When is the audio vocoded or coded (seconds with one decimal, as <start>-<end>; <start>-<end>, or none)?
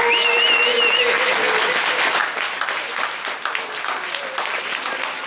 none